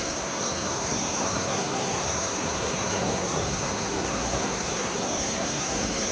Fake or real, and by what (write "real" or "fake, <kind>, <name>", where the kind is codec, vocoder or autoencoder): fake, codec, SNAC